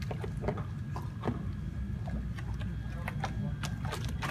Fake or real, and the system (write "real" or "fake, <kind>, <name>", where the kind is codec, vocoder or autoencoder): real